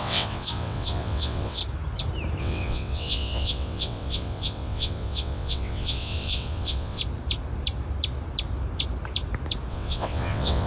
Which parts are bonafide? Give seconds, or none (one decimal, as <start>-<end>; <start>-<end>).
1.6-2.4; 7.0-9.7